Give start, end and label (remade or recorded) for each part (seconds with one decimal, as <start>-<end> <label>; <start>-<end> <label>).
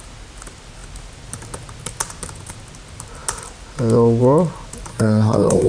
0.0-4.9 recorded; 4.9-5.7 remade